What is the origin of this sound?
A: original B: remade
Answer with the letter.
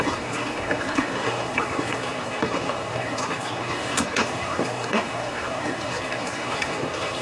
B